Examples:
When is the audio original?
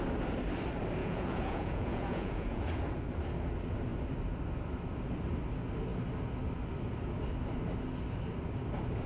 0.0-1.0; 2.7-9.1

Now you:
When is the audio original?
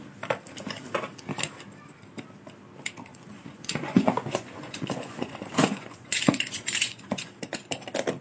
0.0-3.1; 7.3-8.2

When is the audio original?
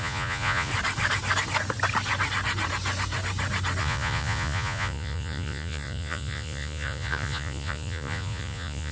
0.7-3.8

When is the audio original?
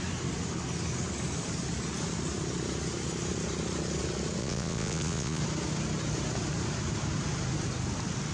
0.0-4.4; 5.4-8.3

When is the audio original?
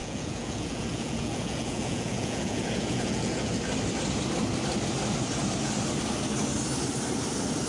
3.5-7.7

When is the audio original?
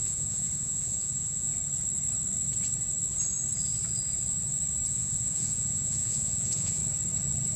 1.5-4.9; 6.8-7.6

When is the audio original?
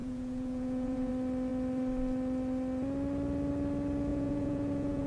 1.1-4.1